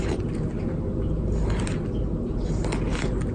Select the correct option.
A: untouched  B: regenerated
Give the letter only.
A